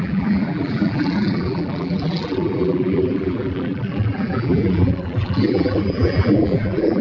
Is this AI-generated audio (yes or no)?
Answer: yes